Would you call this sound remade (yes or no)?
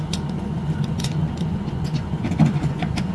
yes